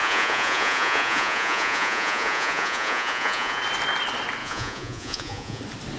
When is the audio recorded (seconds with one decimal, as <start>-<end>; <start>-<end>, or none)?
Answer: 3.6-4.4; 5.6-6.0